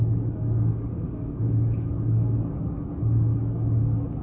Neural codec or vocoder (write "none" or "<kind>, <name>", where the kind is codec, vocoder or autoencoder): codec, DAC